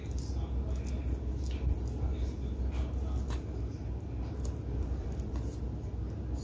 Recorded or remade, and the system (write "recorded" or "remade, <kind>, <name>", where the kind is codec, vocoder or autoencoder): recorded